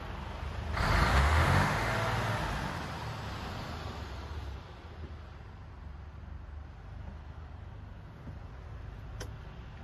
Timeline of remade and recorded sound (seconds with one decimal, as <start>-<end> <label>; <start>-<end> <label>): 0.0-1.1 recorded; 1.1-1.9 remade; 1.9-9.8 recorded